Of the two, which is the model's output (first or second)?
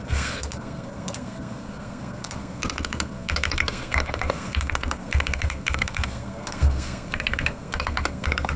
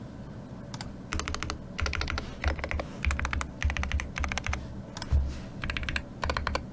first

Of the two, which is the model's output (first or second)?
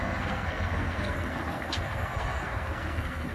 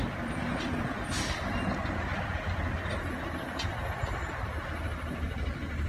first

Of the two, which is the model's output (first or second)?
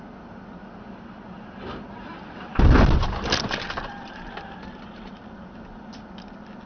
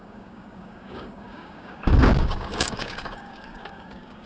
second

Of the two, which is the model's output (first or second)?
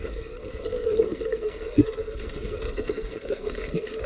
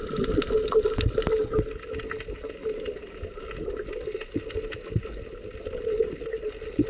first